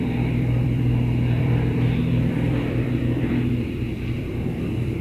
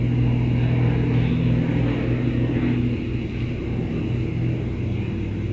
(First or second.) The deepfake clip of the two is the first